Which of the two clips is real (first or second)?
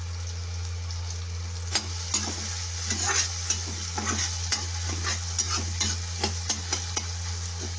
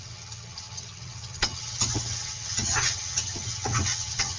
first